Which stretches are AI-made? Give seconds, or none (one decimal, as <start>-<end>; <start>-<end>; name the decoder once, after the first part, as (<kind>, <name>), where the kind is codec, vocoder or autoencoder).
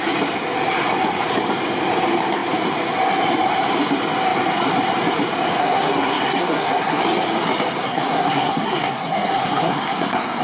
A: 5.6-7.0 (codec, SNAC); 7.8-10.4